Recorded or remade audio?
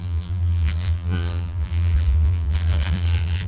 remade